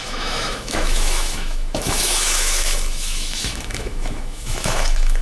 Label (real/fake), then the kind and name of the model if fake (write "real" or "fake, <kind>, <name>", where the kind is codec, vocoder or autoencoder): fake, autoencoder, DAC-VAE